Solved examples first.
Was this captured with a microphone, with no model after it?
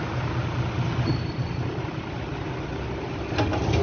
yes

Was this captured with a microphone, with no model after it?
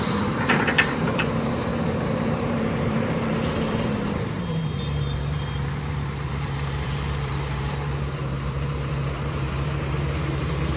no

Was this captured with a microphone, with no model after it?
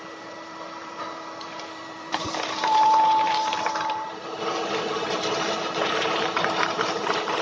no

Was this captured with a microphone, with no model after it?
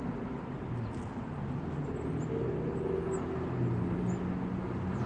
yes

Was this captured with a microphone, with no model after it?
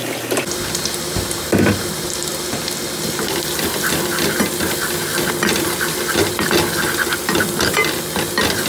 yes